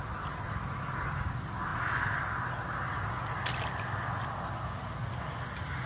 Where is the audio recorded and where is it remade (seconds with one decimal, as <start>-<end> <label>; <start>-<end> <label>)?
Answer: 0.0-5.9 recorded